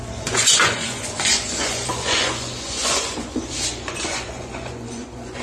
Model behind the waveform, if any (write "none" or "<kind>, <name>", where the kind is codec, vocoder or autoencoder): vocoder, Vocos